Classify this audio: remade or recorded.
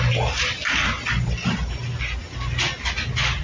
recorded